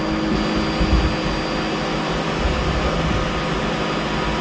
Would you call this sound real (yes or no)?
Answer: yes